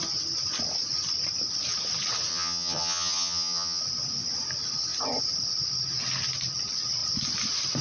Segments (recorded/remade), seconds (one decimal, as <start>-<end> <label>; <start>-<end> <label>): 0.0-2.3 recorded; 2.3-3.8 remade; 3.8-7.8 recorded